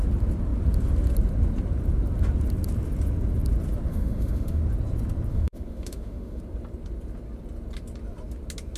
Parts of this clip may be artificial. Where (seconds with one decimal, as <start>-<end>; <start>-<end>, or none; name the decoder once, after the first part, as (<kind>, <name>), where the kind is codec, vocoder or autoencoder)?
3.9-4.6 (autoencoder, DAC-VAE); 5.3-6.4